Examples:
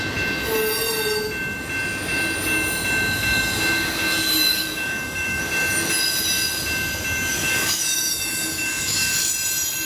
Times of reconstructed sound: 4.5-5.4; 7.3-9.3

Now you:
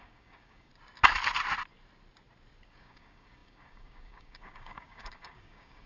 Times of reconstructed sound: 0.0-0.7; 2.7-5.9

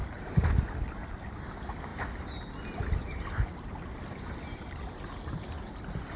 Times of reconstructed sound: none

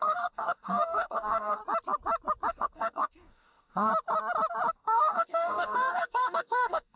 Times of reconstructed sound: 0.0-1.6; 2.5-3.9; 4.7-7.0

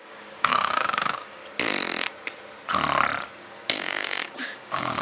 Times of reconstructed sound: 0.0-1.4; 3.3-5.0